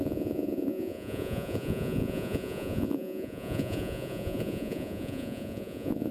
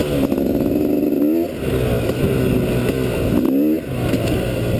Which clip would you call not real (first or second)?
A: first